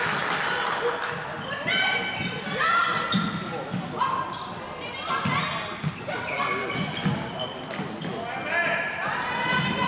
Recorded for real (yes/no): yes